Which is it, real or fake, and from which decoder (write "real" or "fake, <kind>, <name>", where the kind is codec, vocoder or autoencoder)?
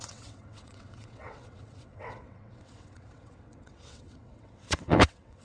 fake, vocoder, WaveNeXt